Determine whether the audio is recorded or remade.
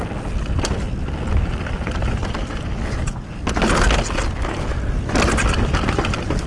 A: recorded